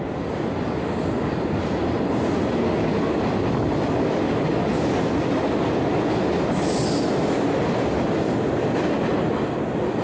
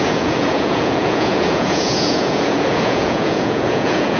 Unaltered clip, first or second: first